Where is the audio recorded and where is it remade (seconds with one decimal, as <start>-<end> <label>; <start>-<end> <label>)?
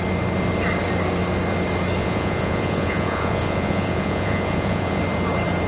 0.0-2.0 recorded; 2.0-5.0 remade; 5.0-5.7 recorded